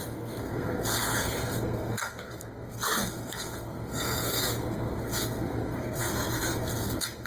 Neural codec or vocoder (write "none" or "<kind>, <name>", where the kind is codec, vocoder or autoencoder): codec, SNAC